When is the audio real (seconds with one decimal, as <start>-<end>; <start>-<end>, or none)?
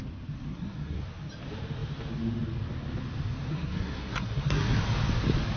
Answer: 0.0-0.5; 1.0-3.5; 4.8-5.6